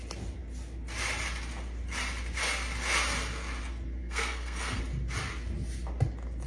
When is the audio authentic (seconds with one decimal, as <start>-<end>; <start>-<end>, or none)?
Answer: 0.0-4.0; 4.8-6.5